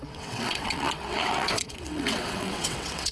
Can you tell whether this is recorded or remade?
remade